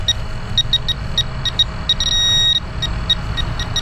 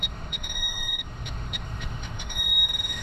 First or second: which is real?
first